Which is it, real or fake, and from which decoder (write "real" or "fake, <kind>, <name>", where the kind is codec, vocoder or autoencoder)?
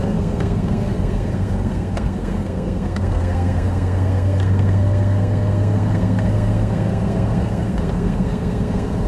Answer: fake, codec, SNAC